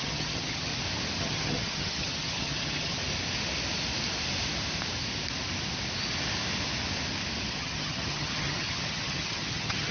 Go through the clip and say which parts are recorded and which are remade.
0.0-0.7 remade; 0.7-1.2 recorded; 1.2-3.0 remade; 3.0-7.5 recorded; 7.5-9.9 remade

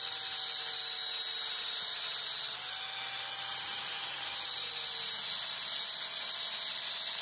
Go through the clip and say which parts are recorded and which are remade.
0.0-3.5 recorded; 3.5-4.7 remade; 4.7-7.2 recorded

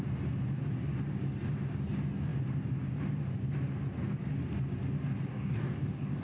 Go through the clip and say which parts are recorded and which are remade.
0.0-5.3 recorded; 5.3-6.2 remade

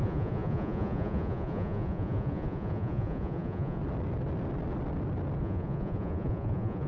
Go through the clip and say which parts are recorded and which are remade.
0.0-3.8 remade; 3.8-5.4 recorded; 5.4-6.9 remade

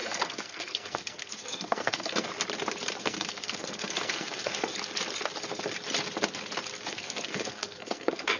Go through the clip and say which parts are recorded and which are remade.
0.0-2.3 remade; 2.3-3.0 recorded; 3.0-4.7 remade; 4.7-6.9 recorded; 6.9-8.4 remade

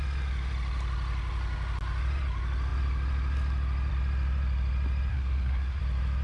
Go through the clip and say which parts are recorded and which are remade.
0.0-5.1 recorded; 5.1-5.8 remade; 5.8-6.2 recorded

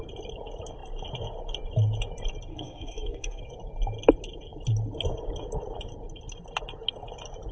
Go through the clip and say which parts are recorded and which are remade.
0.0-2.5 recorded; 2.5-3.4 remade; 3.4-7.5 recorded